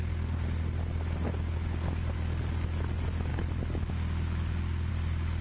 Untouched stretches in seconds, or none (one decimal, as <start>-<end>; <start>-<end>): 0.0-5.4